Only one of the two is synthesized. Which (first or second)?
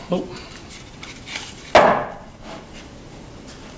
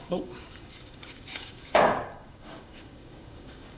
second